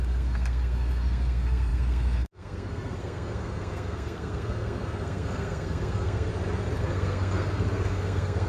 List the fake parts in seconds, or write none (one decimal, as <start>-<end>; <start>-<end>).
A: 0.0-6.3; 6.8-8.5

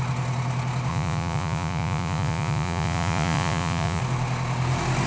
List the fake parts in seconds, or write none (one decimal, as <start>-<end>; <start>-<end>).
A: 0.9-4.0

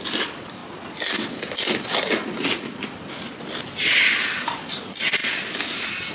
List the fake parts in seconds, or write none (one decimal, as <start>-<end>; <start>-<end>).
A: none

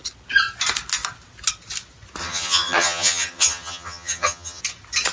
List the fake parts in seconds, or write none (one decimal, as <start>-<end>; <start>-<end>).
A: 2.2-4.6

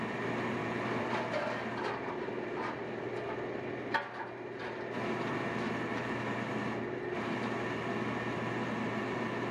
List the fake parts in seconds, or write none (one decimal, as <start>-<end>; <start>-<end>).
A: 0.6-3.8

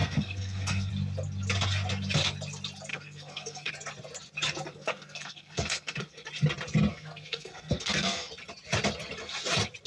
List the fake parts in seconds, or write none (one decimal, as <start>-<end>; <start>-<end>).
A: 0.0-0.9; 2.9-3.7; 4.7-6.3; 6.9-8.3

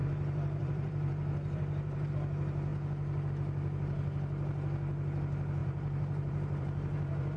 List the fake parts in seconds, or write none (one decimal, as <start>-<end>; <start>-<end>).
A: 0.0-2.1; 5.6-7.4

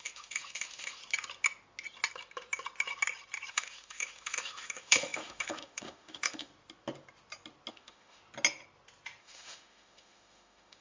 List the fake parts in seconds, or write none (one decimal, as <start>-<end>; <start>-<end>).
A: 0.0-1.0; 3.5-6.5; 7.7-8.2; 9.2-10.8